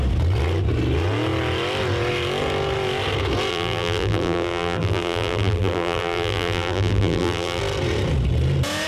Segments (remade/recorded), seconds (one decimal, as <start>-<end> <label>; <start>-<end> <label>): 0.0-3.5 recorded; 3.5-7.6 remade; 7.6-8.9 recorded